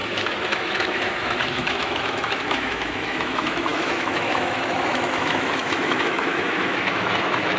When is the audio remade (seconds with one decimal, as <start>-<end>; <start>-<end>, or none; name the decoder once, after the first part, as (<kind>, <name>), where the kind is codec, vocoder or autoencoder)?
0.0-7.6 (autoencoder, DAC-VAE)